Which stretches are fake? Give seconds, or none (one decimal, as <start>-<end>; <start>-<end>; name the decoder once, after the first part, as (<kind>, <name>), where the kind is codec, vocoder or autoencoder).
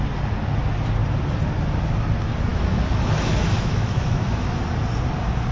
2.5-4.6 (autoencoder, DAC-VAE)